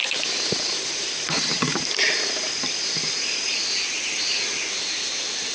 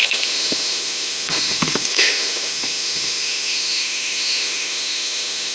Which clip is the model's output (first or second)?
second